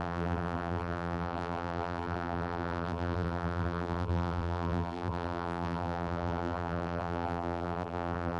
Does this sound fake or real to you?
fake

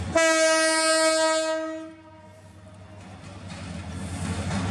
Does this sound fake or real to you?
real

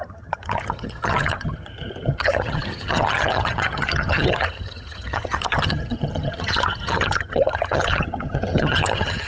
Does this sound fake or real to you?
fake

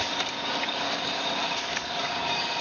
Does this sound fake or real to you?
fake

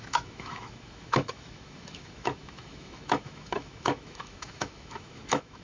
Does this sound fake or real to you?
fake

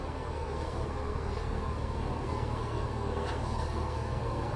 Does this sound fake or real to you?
fake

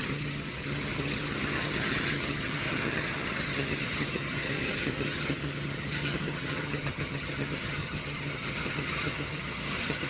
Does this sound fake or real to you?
fake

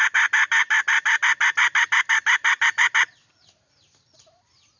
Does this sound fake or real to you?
real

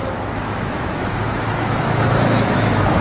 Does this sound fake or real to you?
fake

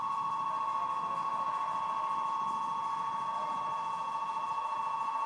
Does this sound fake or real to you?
real